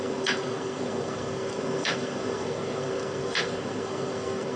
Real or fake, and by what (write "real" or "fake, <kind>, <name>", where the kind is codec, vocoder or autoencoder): fake, codec, SNAC